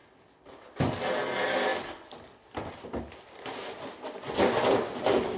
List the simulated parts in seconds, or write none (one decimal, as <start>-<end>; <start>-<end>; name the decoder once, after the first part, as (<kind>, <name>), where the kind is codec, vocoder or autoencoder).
1.7-4.3 (vocoder, BigVGAN v2)